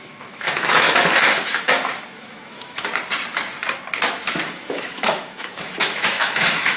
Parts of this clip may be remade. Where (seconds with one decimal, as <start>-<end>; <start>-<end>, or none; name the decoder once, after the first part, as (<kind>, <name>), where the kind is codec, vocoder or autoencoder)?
0.0-2.9 (autoencoder, DAC-VAE); 4.5-6.8